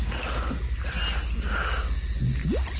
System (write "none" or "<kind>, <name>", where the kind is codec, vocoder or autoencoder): none